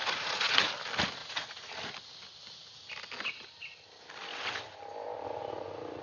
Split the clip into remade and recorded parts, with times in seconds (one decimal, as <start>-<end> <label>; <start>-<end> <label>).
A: 0.0-0.6 remade; 0.6-1.2 recorded; 1.2-1.7 remade; 1.7-6.0 recorded